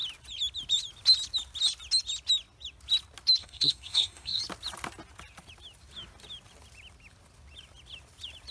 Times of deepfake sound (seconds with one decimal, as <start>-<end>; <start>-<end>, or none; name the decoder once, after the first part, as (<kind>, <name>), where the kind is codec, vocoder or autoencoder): 3.4-4.4 (codec, SNAC)